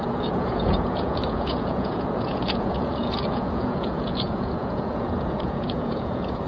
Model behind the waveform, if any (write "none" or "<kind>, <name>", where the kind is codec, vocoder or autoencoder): vocoder, Vocos